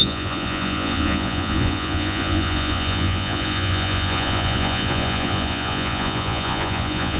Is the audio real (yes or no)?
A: no